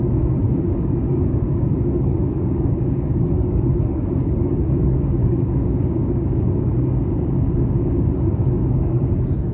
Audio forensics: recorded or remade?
remade